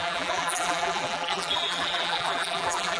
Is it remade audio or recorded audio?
remade